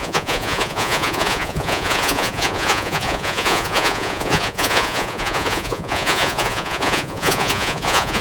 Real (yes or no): no